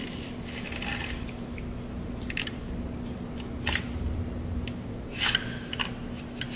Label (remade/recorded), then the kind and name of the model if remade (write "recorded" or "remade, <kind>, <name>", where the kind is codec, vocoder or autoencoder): recorded